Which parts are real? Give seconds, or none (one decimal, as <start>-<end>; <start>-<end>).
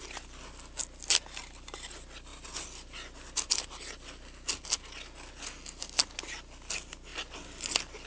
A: 0.0-8.1